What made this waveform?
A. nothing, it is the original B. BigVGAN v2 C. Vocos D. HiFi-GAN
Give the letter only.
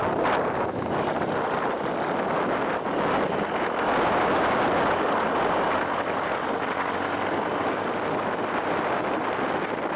A